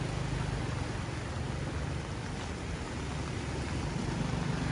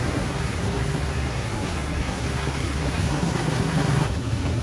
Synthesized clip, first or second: second